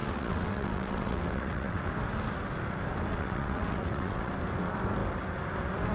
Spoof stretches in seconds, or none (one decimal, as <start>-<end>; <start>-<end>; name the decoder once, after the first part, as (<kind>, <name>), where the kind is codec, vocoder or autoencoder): 0.0-1.9 (vocoder, WaveNeXt); 3.1-4.3